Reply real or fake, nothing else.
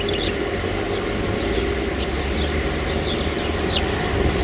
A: real